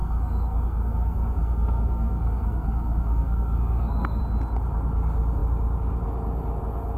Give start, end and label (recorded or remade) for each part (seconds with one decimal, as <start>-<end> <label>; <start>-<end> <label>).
0.0-4.2 remade; 4.2-7.0 recorded